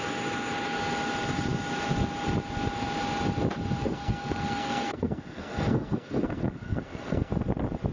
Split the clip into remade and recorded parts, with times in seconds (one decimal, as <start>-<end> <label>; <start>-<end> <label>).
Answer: 0.0-3.8 recorded; 3.8-7.3 remade; 7.3-7.9 recorded